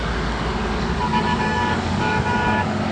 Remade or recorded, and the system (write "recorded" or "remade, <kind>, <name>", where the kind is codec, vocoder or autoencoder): remade, codec, DAC